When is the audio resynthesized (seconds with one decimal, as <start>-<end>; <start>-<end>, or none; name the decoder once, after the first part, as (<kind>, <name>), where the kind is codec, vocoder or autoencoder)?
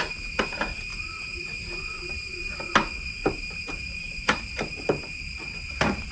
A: 0.0-0.9 (vocoder, BigVGAN v2); 1.9-2.5; 3.3-6.1